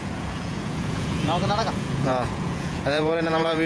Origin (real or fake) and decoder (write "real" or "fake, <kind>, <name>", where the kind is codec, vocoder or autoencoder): fake, vocoder, Vocos